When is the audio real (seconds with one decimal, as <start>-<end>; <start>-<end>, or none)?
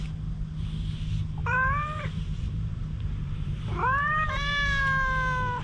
0.0-1.4; 4.8-5.6